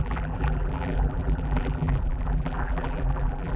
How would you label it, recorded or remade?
remade